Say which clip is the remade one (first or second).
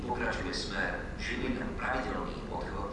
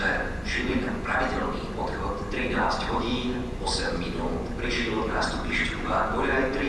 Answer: second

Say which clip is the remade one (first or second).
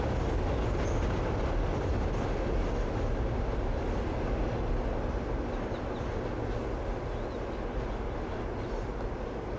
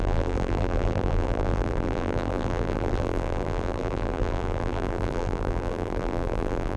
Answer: second